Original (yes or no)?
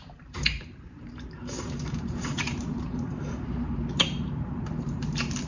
no